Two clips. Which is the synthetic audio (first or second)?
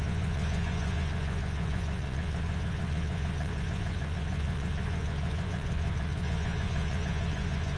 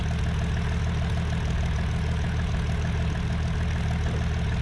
first